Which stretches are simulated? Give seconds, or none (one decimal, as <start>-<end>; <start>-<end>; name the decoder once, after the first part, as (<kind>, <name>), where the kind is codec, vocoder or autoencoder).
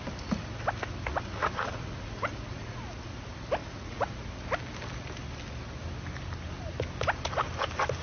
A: 1.1-2.8 (vocoder, Vocos); 3.6-4.2